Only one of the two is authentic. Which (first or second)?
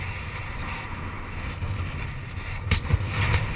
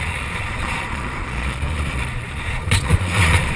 first